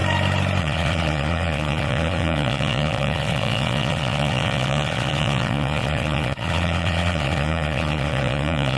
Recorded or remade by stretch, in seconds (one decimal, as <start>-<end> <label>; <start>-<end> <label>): 0.0-0.6 recorded; 0.6-8.8 remade